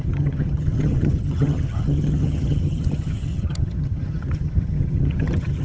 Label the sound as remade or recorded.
remade